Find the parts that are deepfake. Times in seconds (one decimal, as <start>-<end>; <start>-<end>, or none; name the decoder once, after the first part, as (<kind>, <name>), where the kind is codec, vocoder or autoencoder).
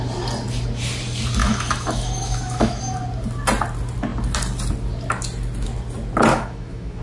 1.4-2.8 (autoencoder, DAC-VAE); 6.3-7.0